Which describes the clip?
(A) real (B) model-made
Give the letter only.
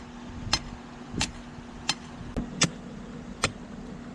A